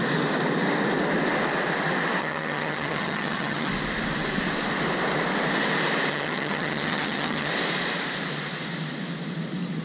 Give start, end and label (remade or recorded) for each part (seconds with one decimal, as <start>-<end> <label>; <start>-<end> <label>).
0.0-2.2 recorded; 2.2-3.7 remade; 3.7-6.1 recorded; 6.1-7.5 remade; 7.5-9.8 recorded